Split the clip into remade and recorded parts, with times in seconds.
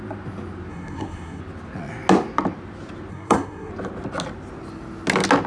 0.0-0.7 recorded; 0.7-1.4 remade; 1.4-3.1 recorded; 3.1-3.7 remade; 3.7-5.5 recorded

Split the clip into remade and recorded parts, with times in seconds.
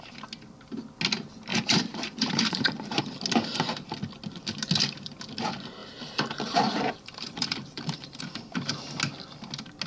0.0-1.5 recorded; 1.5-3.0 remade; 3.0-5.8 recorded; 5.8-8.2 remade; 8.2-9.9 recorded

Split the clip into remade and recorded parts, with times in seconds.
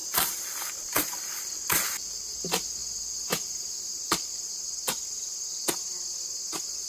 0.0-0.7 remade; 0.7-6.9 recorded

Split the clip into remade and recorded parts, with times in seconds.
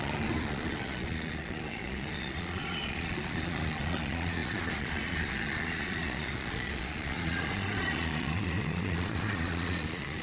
0.0-10.2 remade